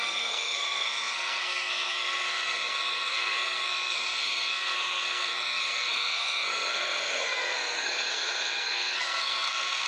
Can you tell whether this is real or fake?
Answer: fake